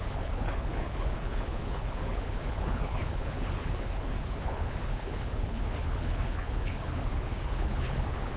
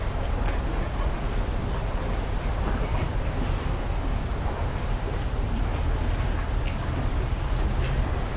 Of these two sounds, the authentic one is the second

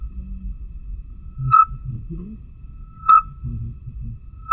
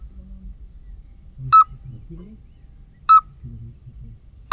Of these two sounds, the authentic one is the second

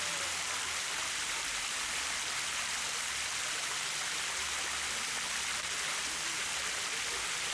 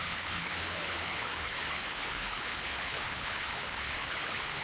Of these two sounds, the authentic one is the first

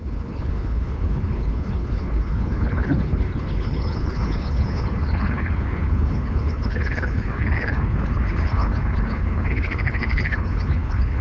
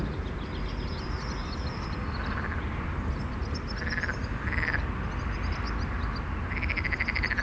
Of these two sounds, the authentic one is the second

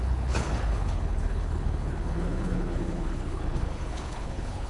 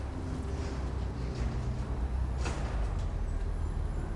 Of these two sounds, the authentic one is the second